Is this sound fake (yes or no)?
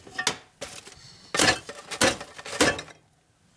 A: no